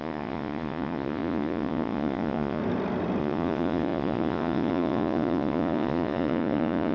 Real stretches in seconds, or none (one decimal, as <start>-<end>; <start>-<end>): 2.6-3.2